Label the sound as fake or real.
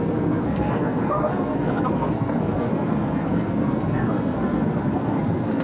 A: fake